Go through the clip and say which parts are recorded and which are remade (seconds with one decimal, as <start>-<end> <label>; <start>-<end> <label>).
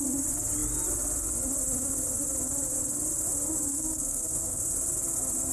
0.0-3.7 recorded; 3.7-4.6 remade; 4.6-5.5 recorded